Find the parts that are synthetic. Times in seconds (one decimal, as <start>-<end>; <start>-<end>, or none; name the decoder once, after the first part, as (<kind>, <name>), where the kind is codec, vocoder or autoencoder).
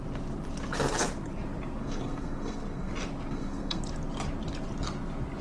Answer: 1.8-2.9 (codec, SNAC); 3.3-3.8